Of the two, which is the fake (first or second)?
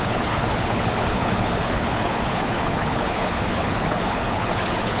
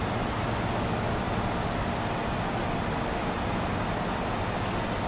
first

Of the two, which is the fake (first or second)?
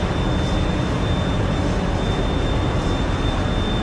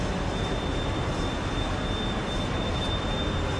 second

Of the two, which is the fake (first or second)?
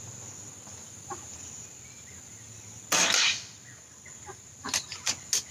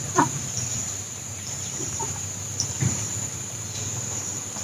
second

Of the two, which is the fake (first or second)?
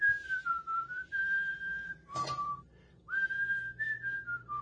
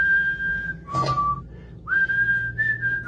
first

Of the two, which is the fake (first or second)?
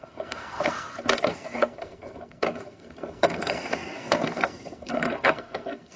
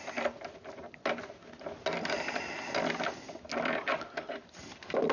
first